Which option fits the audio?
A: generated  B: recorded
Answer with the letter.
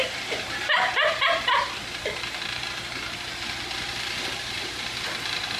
A